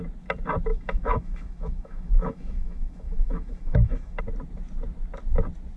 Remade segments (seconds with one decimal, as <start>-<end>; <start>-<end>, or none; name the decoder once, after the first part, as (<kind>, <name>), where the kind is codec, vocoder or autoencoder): 0.7-4.2 (autoencoder, DAC-VAE)